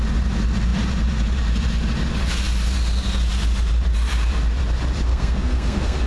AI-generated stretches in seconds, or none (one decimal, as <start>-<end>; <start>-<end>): 5.1-6.1